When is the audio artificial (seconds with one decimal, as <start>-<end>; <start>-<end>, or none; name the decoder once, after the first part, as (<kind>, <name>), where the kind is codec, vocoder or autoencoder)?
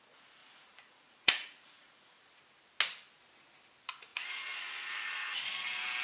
0.4-2.4 (vocoder, Vocos); 4.1-5.4